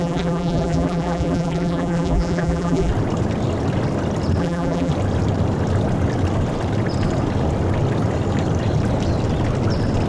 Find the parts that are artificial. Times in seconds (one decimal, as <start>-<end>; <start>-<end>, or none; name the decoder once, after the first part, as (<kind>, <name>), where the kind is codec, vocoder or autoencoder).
0.0-2.9 (vocoder, BigVGAN v2); 4.4-4.9